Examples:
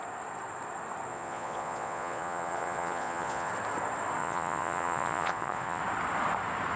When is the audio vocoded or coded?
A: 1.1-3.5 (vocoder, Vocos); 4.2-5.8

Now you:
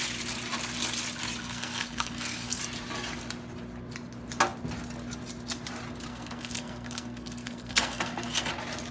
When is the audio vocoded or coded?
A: 1.4-2.6 (codec, SNAC); 6.1-8.5

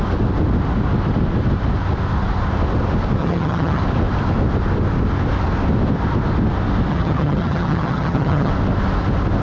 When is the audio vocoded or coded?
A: 3.2-3.8 (vocoder, HiFi-GAN); 6.9-8.5

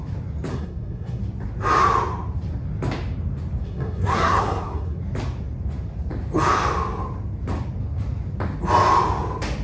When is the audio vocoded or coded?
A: 0.5-1.2 (codec, SNAC); 3.6-5.0

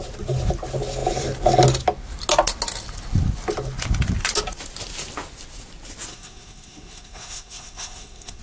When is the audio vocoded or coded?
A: 6.1-8.4 (codec, SNAC)

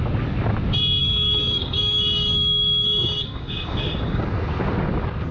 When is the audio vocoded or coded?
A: 1.0-4.2 (codec, DAC)

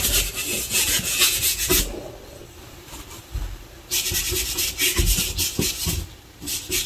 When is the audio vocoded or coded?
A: 0.5-1.8 (vocoder, Vocos)

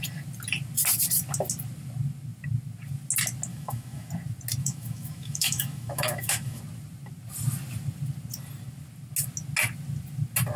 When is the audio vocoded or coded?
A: 3.5-4.1 (autoencoder, DAC-VAE); 4.6-6.6